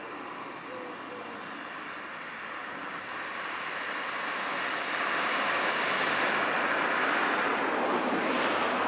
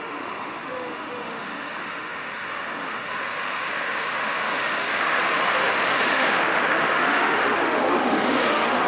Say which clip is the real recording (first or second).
first